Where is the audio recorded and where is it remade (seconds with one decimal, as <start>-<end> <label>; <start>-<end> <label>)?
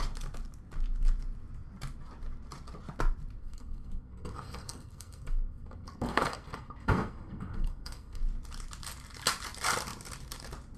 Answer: 0.0-3.4 recorded; 3.4-8.2 remade; 8.2-10.8 recorded